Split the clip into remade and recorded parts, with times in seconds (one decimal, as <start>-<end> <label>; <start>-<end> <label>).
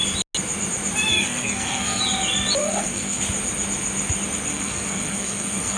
0.0-1.1 recorded; 1.1-2.0 remade; 2.0-2.6 recorded; 2.6-3.2 remade; 3.2-4.5 recorded; 4.5-5.8 remade